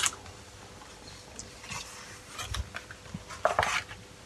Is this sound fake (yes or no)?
no